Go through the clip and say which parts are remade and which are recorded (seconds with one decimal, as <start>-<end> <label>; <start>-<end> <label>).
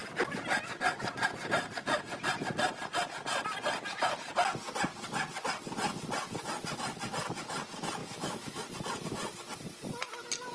0.0-8.0 recorded; 8.0-8.6 remade; 8.6-10.5 recorded